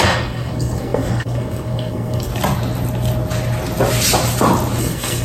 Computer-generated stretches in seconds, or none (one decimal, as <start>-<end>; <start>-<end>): 0.0-2.3; 4.8-5.2